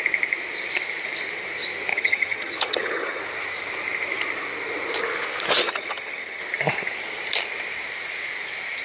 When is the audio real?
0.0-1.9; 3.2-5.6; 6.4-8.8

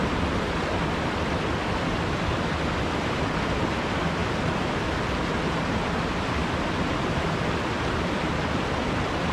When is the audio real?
0.0-9.3